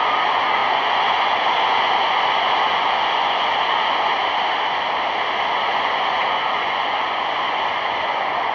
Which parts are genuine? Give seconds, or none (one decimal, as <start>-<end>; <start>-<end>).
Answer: 4.1-5.5